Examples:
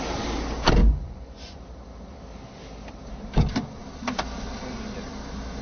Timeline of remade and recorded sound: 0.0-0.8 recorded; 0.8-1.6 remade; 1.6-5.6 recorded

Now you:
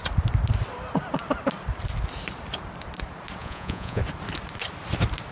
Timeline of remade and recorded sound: 0.0-3.4 recorded; 3.4-4.0 remade; 4.0-5.3 recorded

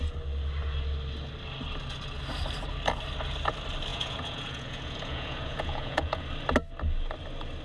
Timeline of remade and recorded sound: 0.0-3.9 recorded; 3.9-6.2 remade; 6.2-7.6 recorded

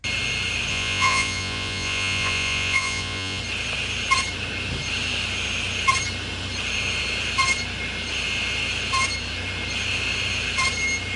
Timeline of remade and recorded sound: 0.0-0.7 recorded; 0.7-3.4 remade; 3.4-11.2 recorded

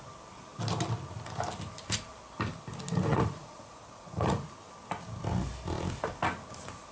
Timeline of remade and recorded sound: 0.0-3.1 recorded; 3.1-4.5 remade; 4.5-6.9 recorded

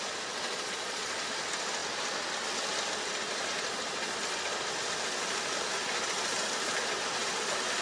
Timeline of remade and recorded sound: 0.0-0.4 recorded; 0.4-1.1 remade; 1.1-7.8 recorded

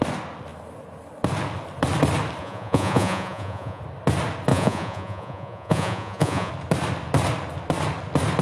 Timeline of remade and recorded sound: 0.0-2.4 recorded; 2.4-3.8 remade; 3.8-4.5 recorded; 4.5-6.5 remade; 6.5-8.4 recorded

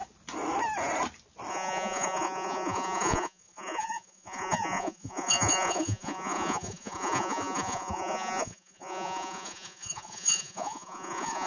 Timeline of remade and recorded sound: 0.0-1.5 recorded; 1.5-11.5 remade